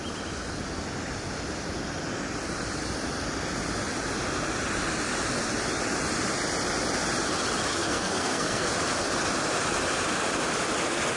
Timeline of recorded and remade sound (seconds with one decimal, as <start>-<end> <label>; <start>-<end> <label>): 0.0-7.7 recorded; 7.7-8.7 remade; 8.7-11.2 recorded